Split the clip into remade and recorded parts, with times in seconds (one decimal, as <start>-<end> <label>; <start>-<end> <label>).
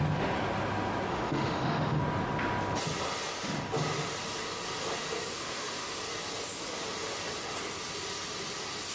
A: 0.0-1.1 recorded; 1.1-2.0 remade; 2.0-5.3 recorded; 5.3-6.0 remade; 6.0-8.9 recorded